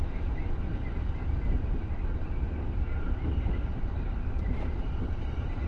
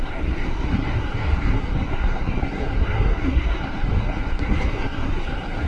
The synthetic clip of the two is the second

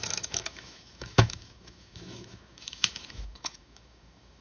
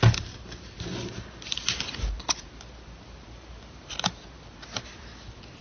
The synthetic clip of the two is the first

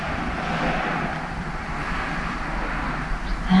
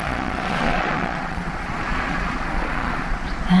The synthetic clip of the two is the second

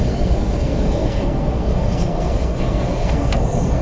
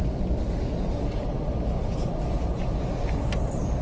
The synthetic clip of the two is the first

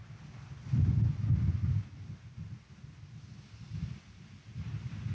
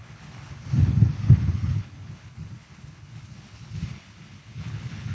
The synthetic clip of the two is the second